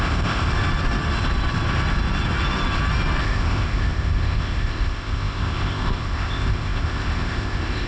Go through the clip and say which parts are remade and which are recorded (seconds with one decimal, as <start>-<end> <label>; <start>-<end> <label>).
0.0-0.5 remade; 0.5-3.2 recorded; 3.2-7.9 remade